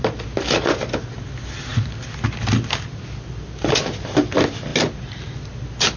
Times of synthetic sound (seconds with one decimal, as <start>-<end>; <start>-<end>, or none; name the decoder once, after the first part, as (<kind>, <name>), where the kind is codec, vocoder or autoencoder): none